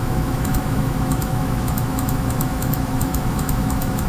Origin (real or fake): fake